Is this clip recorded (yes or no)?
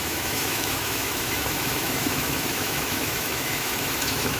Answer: no